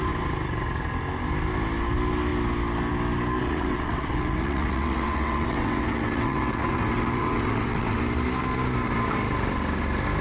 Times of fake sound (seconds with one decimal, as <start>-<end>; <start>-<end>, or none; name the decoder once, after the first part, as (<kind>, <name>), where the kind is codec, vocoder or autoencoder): 3.4-8.0 (vocoder, WaveNeXt)